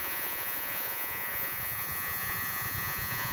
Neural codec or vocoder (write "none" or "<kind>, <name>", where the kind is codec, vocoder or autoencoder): vocoder, Vocos